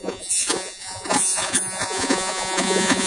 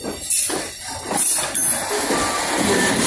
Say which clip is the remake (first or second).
first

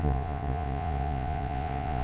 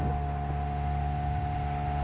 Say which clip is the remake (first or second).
first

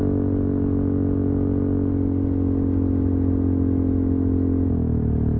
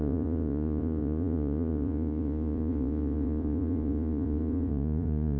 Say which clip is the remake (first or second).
second